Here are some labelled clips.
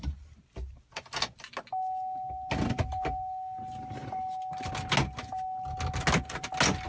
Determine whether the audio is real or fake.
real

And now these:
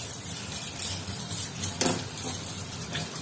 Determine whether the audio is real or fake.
fake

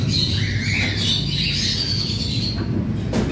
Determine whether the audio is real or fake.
real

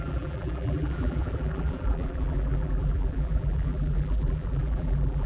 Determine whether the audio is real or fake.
fake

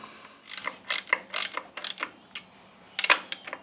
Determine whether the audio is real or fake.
real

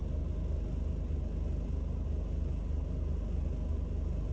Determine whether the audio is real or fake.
real